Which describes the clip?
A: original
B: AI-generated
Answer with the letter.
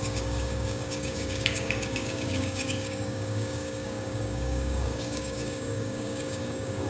B